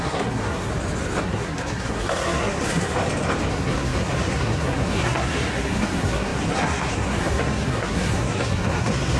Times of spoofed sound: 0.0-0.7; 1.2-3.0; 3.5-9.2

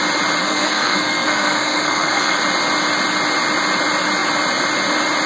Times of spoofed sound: 0.4-2.4

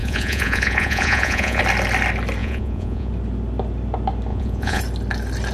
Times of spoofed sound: 0.0-1.6; 2.4-3.1; 4.3-4.8

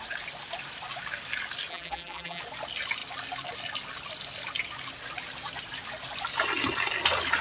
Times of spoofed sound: 1.7-2.4

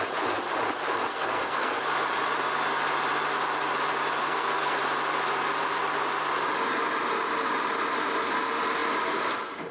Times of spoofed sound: 1.1-1.8; 4.2-4.8